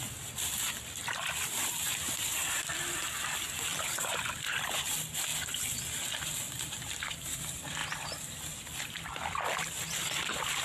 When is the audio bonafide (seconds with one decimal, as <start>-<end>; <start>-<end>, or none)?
5.3-6.7; 7.8-9.3